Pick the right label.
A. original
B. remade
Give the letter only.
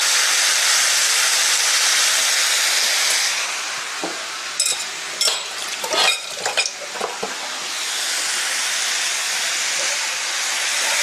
A